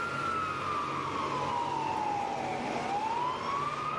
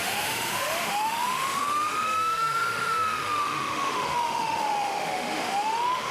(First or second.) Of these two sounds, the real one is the first